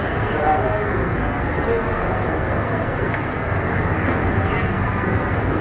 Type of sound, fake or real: fake